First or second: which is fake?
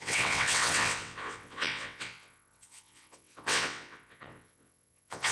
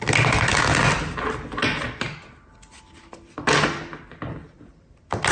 first